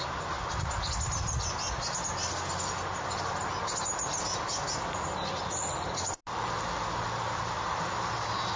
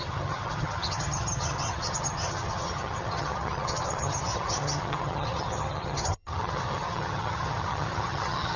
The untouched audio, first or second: first